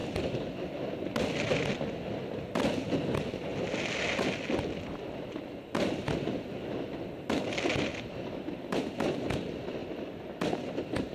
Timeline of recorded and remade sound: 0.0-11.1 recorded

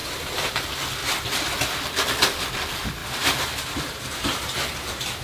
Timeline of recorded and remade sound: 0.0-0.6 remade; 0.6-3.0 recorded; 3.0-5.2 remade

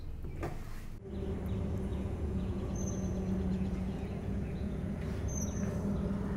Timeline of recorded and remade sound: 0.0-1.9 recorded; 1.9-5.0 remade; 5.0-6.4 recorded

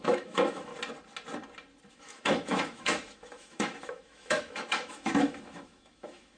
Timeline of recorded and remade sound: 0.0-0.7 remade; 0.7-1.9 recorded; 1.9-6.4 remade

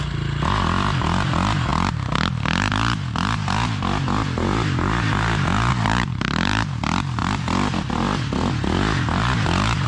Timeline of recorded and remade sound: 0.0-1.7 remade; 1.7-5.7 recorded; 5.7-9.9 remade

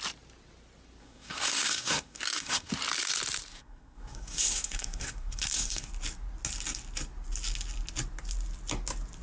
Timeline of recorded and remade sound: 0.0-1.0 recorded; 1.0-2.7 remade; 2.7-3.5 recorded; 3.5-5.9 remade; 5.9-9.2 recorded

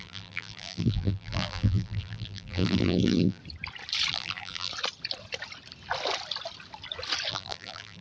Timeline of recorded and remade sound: 0.0-3.4 remade; 3.4-4.1 recorded; 4.1-4.7 remade; 4.7-7.3 recorded; 7.3-8.0 remade